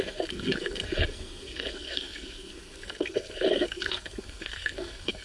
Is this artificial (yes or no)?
yes